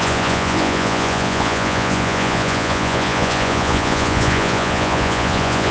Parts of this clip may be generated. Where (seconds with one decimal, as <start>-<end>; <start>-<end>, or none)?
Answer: 0.0-5.7